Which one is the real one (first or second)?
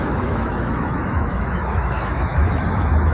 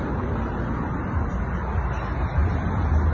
second